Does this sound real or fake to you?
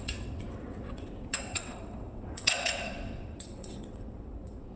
fake